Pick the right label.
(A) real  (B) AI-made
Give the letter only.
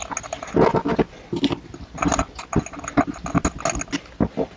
A